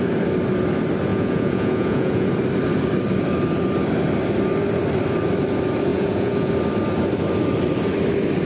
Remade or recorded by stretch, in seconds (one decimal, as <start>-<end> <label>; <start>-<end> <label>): 0.0-1.1 recorded; 1.1-2.3 remade; 2.3-5.9 recorded; 5.9-6.5 remade; 6.5-8.4 recorded